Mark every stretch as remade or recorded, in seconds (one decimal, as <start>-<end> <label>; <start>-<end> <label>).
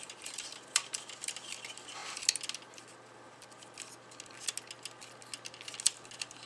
0.0-6.5 recorded